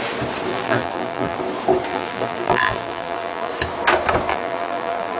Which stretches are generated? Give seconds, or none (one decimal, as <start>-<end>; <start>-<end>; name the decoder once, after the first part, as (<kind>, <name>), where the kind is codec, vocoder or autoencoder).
0.5-1.4 (vocoder, BigVGAN v2); 1.9-3.5; 4.3-5.2